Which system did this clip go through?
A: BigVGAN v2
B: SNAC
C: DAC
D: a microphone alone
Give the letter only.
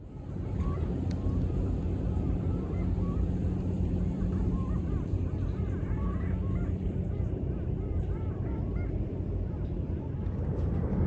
A